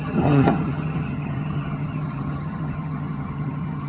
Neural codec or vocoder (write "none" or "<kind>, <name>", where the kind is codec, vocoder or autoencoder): vocoder, HiFi-GAN